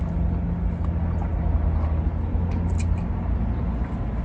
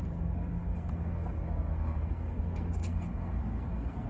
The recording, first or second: first